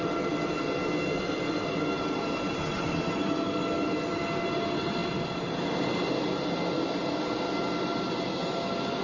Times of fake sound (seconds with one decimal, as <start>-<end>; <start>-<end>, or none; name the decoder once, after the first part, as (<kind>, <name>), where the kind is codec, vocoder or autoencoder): none